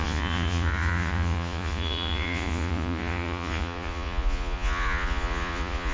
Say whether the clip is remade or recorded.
remade